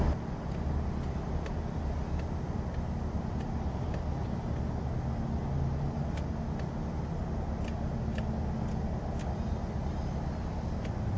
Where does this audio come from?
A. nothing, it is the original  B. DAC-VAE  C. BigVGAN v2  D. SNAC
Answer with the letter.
A